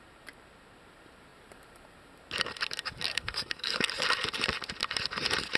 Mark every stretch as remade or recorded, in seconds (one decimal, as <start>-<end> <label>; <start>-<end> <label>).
0.0-3.1 recorded; 3.1-3.9 remade; 3.9-5.6 recorded